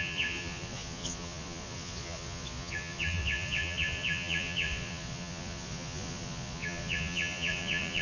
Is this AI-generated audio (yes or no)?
yes